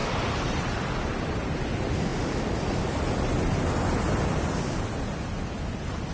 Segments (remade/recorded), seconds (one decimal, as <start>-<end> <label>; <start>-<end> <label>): 0.0-0.9 remade; 0.9-2.1 recorded; 2.1-3.1 remade; 3.1-6.1 recorded